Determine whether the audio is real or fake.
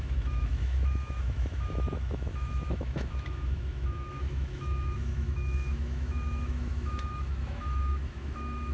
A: fake